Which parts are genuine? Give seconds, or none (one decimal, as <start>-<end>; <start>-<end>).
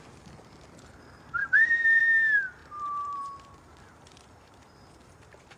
0.0-1.4; 2.0-2.6; 4.9-5.6